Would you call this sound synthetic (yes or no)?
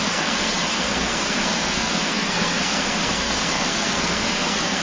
yes